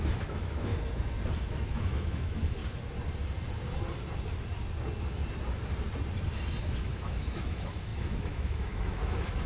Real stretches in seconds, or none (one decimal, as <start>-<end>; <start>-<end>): 0.7-1.5; 2.6-6.6